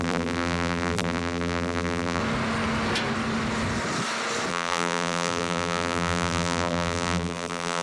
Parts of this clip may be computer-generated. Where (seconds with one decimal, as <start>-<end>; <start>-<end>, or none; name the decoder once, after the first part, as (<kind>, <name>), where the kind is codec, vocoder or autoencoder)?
0.0-2.2 (vocoder, BigVGAN v2); 4.5-7.8